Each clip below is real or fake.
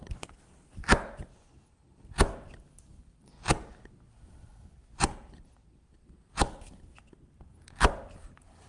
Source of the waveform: real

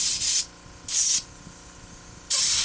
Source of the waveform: real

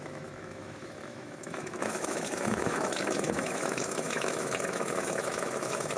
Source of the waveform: fake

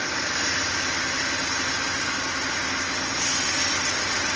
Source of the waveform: real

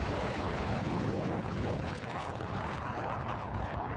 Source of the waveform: fake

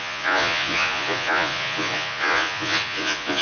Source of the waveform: fake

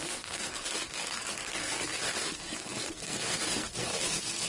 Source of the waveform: fake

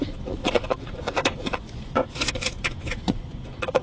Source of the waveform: fake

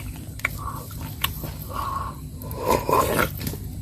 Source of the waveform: real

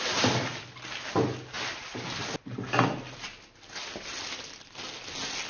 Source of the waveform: real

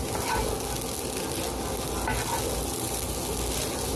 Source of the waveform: real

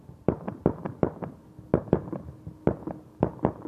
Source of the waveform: real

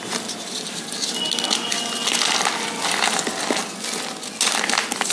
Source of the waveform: real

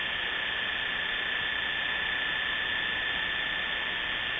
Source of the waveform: real